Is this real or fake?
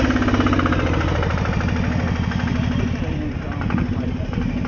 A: real